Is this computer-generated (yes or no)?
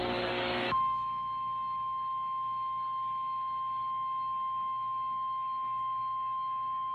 yes